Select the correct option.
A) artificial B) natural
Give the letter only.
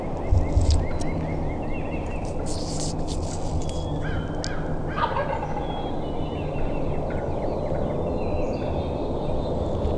B